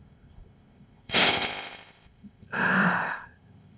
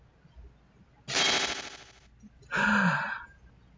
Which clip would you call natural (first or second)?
second